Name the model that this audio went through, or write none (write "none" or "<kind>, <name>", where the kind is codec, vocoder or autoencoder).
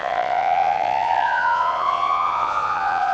vocoder, Vocos